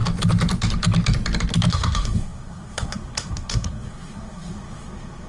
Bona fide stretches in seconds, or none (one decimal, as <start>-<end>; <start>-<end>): 0.0-1.7

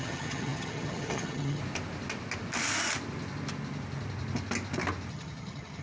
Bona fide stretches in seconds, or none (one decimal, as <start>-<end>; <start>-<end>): 1.6-5.1

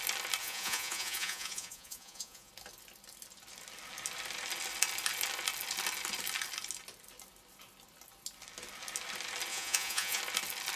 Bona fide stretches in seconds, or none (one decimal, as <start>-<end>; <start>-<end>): 0.0-0.4; 2.5-9.5; 10.2-10.8

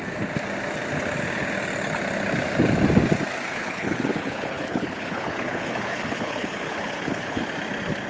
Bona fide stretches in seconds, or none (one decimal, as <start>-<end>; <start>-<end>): 0.0-3.5; 7.4-8.1

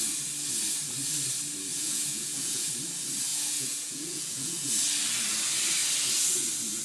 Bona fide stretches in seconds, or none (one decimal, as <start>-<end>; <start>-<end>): 0.0-1.7; 2.7-3.3; 4.7-6.8

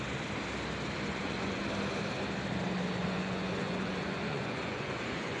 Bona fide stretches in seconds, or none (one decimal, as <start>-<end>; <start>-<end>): 0.0-1.1; 1.6-3.0